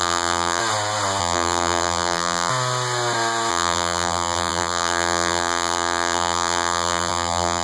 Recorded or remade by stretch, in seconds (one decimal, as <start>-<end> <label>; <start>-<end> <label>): 0.0-0.6 remade; 0.6-1.2 recorded; 1.2-2.5 remade; 2.5-3.5 recorded; 3.5-7.6 remade